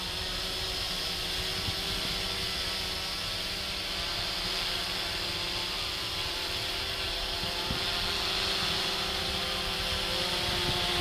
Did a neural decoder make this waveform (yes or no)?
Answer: no